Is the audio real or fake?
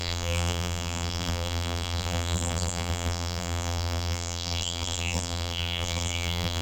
fake